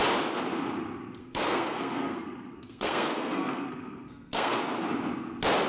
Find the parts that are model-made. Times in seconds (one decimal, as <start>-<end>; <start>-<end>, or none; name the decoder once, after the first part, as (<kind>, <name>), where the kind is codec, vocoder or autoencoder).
1.2-4.6 (codec, SNAC)